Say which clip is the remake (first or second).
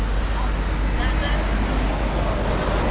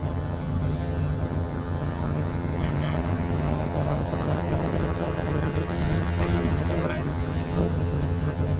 second